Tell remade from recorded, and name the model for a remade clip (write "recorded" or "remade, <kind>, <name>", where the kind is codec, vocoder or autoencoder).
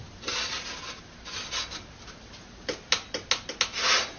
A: recorded